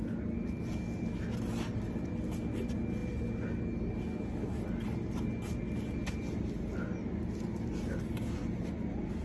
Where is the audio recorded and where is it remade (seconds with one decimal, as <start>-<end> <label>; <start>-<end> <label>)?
0.0-9.2 recorded